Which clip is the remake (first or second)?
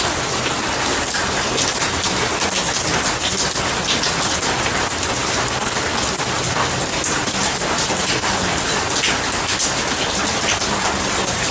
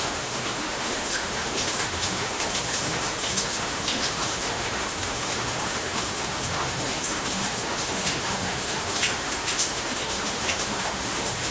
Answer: second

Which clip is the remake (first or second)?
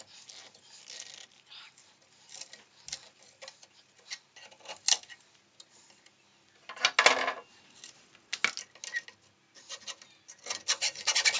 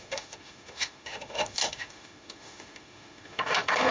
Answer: second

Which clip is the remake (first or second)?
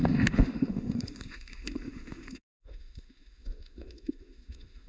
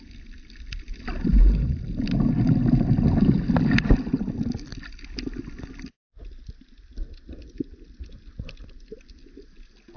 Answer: first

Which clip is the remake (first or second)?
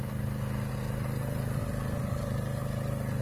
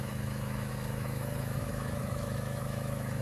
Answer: second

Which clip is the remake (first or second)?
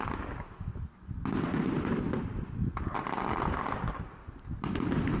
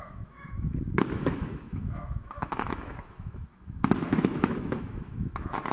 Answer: second